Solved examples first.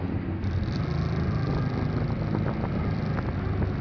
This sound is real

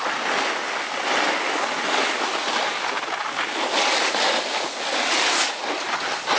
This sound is real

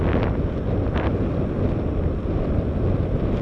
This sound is real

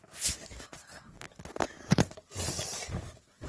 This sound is real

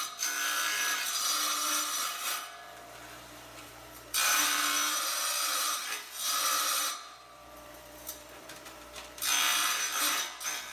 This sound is fake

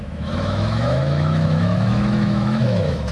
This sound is fake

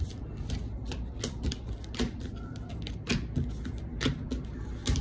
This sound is real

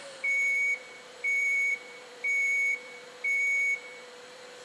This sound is fake